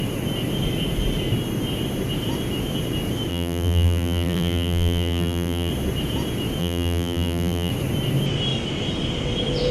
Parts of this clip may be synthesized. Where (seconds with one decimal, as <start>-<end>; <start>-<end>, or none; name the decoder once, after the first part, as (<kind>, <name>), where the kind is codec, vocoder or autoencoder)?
3.3-5.7 (vocoder, BigVGAN v2); 6.6-7.7